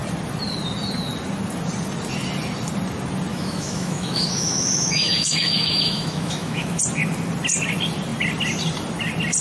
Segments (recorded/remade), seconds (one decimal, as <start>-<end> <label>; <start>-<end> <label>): 0.0-3.3 recorded; 3.3-6.8 remade; 6.8-9.4 recorded